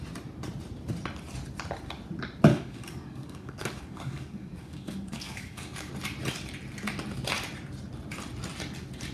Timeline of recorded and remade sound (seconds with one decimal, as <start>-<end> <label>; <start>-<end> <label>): 0.0-2.5 recorded; 2.5-5.9 remade; 5.9-9.1 recorded